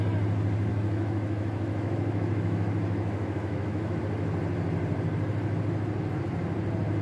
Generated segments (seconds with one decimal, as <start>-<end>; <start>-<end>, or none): 0.7-4.0